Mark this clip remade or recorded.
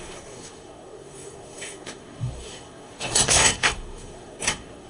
remade